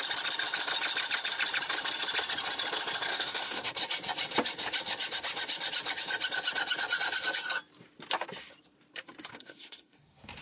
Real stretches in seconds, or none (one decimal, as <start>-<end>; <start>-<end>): 0.0-3.1; 3.7-9.3; 10.0-10.4